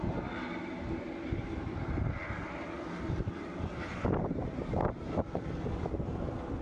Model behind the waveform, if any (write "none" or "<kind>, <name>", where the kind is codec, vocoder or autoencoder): none